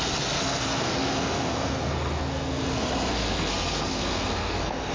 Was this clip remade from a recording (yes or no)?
yes